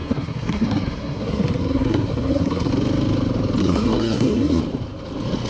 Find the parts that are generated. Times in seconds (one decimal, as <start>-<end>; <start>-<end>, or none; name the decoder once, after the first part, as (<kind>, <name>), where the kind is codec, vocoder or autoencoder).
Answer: 0.0-2.7 (codec, SNAC); 3.6-4.6